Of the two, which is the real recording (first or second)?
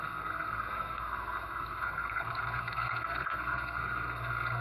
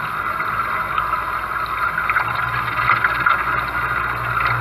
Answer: second